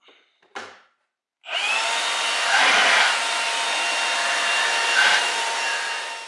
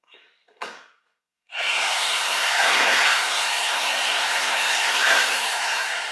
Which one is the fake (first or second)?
second